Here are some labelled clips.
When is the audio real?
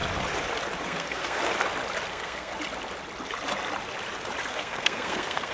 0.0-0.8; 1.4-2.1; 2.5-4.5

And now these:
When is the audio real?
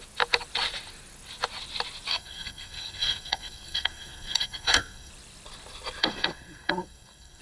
0.0-2.1; 5.1-6.0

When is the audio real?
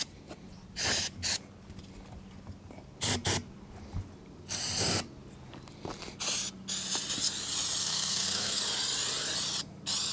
0.0-7.8; 8.6-10.1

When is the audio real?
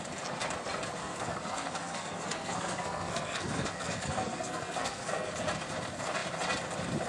0.0-1.0; 5.3-7.1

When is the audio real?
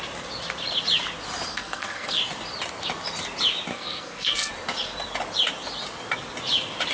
0.0-1.5; 2.2-3.7; 4.5-6.9